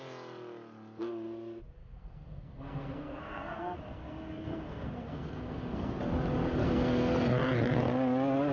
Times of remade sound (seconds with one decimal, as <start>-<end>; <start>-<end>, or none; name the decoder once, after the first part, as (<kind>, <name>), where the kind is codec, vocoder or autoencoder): 1.8-6.0 (codec, SNAC); 6.6-7.1